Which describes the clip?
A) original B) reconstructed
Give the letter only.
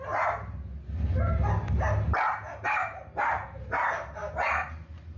A